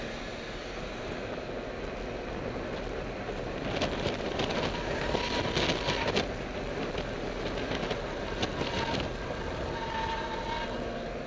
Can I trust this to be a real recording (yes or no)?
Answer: yes